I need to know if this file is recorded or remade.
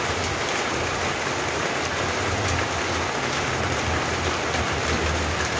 recorded